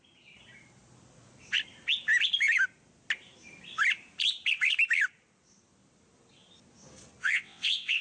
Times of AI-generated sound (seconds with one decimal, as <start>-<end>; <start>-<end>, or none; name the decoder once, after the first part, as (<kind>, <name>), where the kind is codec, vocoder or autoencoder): 7.2-8.0 (vocoder, WaveNeXt)

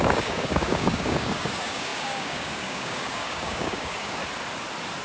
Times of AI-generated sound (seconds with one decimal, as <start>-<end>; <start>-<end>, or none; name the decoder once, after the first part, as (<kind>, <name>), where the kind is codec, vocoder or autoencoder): 0.0-4.2 (codec, DAC)

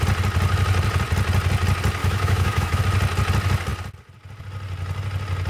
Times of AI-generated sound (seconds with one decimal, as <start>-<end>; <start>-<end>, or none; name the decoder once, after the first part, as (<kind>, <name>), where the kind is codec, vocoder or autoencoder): 2.0-2.8 (autoencoder, DAC-VAE)

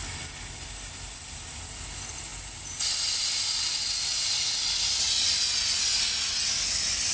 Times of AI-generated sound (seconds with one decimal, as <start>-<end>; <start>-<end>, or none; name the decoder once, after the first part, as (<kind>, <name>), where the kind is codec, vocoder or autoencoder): none